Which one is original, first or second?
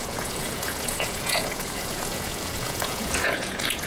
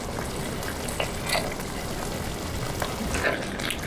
second